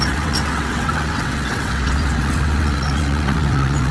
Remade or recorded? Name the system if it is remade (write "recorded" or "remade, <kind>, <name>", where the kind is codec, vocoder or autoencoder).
remade, vocoder, WaveNeXt